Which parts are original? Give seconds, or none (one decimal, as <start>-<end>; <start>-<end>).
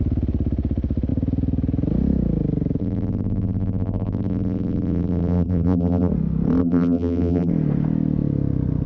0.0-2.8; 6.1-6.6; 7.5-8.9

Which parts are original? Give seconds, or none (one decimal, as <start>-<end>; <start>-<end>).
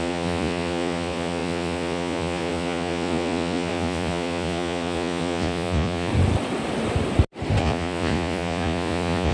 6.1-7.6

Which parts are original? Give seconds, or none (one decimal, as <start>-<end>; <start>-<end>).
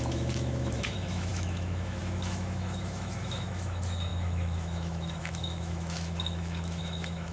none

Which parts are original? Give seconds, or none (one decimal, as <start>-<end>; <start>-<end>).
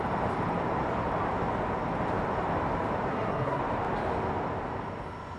0.0-3.1; 3.6-5.4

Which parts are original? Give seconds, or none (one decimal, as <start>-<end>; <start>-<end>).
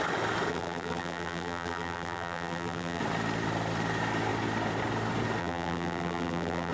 0.0-0.5; 3.0-5.4